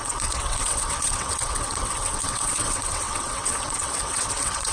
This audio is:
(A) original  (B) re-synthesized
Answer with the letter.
B